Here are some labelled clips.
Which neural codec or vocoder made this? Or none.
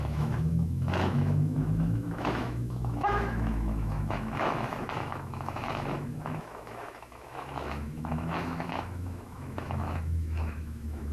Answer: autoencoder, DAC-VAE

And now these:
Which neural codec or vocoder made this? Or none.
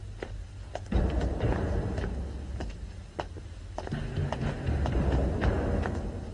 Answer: none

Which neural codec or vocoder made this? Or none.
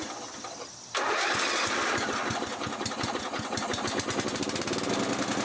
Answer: none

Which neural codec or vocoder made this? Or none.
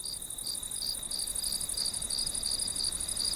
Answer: none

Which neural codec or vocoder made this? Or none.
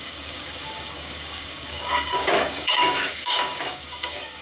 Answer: codec, DAC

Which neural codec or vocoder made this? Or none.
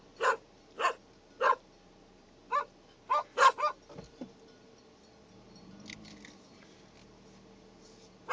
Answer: none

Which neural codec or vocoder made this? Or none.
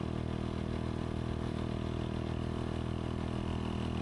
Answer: none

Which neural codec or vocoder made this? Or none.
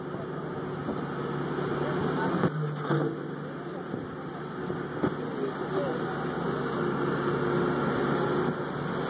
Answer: none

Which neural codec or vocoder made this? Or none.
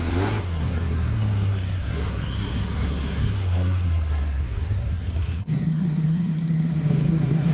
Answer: codec, SNAC